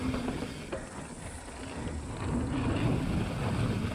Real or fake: real